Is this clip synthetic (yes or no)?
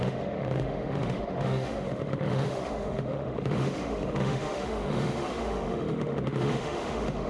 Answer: yes